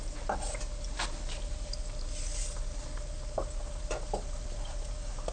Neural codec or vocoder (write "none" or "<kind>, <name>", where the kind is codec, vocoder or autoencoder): none